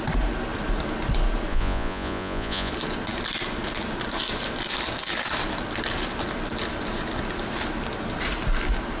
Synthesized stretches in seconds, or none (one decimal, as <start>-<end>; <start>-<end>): 1.5-2.7